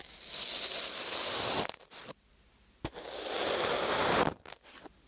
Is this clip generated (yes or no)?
no